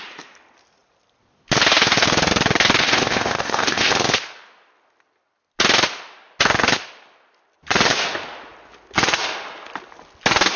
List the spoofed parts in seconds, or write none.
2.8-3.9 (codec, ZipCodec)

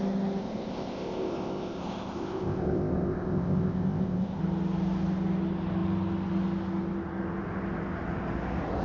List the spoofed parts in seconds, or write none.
0.4-4.4 (codec, ZipCodec)

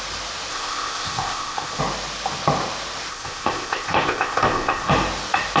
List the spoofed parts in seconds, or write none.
0.5-1.8 (codec, ZipCodec); 3.1-4.9

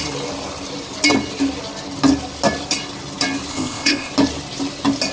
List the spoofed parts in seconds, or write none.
3.5-4.1 (codec, ZipCodec)

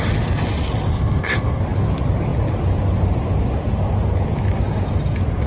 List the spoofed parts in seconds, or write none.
0.9-1.6 (codec, ZipCodec)

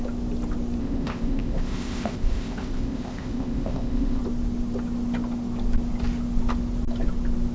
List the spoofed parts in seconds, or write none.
0.8-4.2 (codec, ZipCodec)